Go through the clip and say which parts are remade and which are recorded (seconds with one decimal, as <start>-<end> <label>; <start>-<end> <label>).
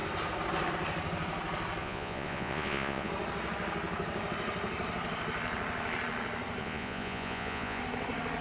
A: 0.0-1.8 recorded; 1.8-3.1 remade; 3.1-6.6 recorded; 6.6-7.8 remade; 7.8-8.4 recorded